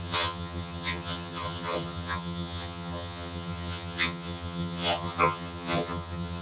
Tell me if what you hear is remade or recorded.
remade